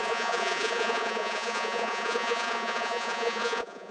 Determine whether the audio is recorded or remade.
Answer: remade